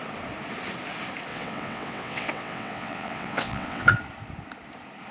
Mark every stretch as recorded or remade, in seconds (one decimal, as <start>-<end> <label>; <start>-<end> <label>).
0.0-1.3 recorded; 1.3-3.9 remade; 3.9-5.1 recorded